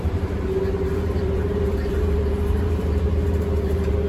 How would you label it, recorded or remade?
remade